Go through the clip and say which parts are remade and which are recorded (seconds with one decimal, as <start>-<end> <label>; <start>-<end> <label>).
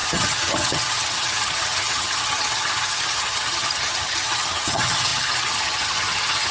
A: 0.0-6.5 remade